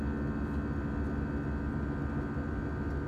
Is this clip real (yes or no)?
yes